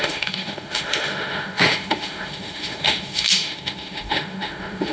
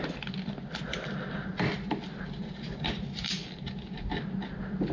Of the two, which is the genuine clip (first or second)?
second